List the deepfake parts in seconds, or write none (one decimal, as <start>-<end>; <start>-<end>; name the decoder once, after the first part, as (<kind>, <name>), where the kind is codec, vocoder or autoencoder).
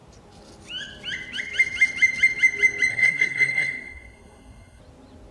2.9-4.8 (codec, SNAC)